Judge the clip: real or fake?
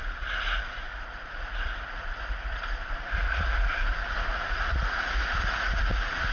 fake